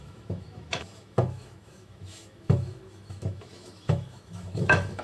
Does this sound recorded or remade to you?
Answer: remade